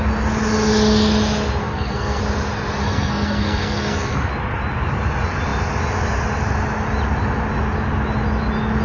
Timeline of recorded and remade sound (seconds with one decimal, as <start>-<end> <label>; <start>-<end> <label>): 0.0-1.6 recorded; 1.6-2.2 remade; 2.2-2.8 recorded; 2.8-4.3 remade; 4.3-8.8 recorded